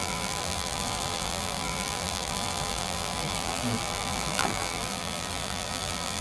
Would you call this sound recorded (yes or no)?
no